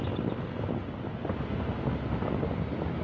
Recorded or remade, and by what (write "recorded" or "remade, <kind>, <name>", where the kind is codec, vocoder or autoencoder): recorded